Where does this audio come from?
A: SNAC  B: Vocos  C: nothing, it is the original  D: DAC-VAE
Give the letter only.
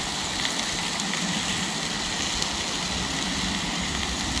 C